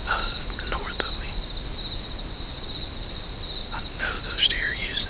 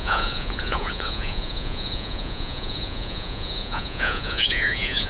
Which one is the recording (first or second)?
first